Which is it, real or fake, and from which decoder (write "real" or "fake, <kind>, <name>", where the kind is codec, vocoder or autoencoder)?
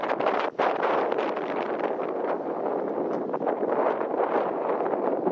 real